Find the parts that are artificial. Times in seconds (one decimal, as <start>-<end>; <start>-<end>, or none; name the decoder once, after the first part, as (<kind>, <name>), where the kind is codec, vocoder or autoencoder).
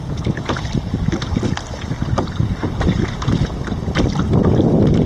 0.0-0.6 (vocoder, Vocos)